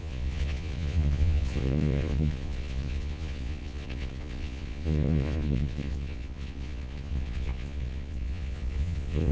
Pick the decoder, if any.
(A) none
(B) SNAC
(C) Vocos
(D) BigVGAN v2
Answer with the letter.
C